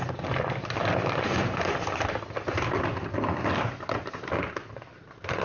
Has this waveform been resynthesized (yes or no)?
no